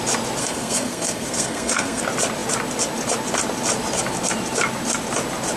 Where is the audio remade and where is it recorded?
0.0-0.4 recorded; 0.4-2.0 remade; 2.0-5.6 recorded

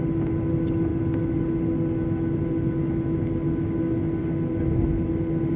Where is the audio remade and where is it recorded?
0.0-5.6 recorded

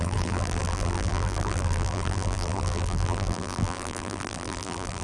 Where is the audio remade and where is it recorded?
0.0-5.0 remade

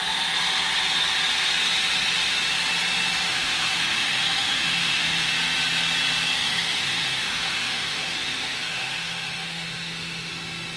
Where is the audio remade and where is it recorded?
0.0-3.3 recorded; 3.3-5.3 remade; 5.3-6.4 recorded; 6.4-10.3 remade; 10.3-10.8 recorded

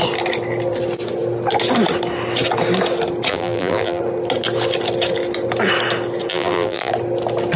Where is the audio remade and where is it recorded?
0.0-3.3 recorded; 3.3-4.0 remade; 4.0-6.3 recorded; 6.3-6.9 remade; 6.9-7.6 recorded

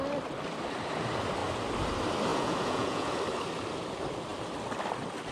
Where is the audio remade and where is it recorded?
0.0-2.3 recorded; 2.3-3.2 remade; 3.2-5.3 recorded